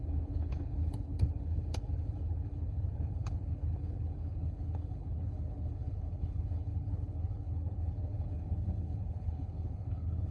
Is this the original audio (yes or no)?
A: no